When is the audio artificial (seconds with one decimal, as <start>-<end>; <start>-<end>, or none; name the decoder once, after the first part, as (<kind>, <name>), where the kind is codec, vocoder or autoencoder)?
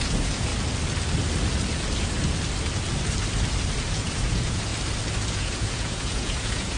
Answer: 0.0-0.5 (vocoder, Vocos); 3.9-4.7; 5.3-6.8